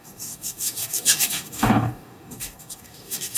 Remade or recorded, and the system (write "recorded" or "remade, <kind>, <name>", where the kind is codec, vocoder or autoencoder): remade, codec, DAC